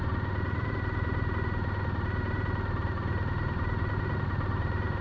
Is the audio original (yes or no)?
yes